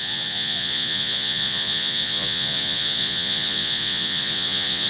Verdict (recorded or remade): remade